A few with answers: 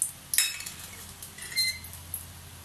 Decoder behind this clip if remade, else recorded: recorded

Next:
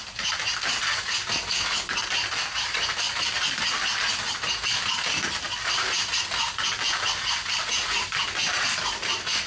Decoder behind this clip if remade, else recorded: recorded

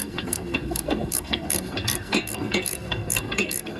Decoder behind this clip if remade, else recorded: remade, codec, SNAC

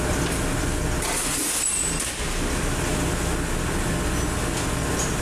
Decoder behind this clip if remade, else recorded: recorded